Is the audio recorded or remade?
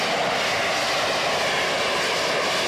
recorded